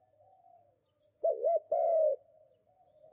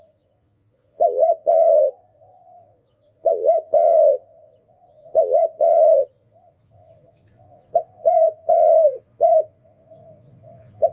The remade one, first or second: second